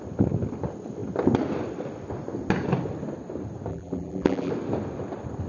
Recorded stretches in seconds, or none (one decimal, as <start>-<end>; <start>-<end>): 0.0-3.7; 4.5-5.5